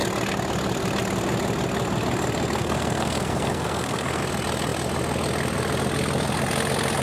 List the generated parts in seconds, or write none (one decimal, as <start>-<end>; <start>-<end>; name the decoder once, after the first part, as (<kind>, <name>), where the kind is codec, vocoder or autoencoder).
2.6-4.2 (codec, SNAC)